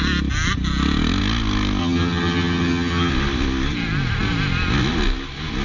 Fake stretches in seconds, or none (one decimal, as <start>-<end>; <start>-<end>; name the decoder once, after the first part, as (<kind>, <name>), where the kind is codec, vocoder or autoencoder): 1.8-3.1 (vocoder, HiFi-GAN)